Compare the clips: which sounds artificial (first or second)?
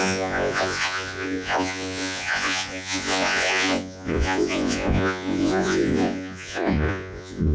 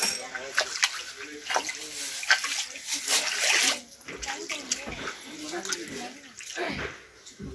first